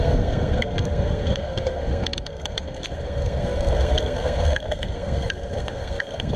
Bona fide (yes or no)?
no